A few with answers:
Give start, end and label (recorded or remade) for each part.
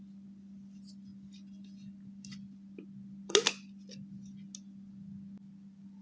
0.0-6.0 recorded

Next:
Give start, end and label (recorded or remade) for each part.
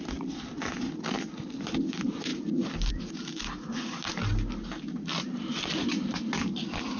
0.0-7.0 recorded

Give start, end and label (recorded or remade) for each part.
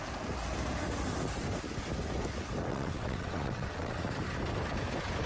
0.0-2.7 recorded; 2.7-4.0 remade; 4.0-5.3 recorded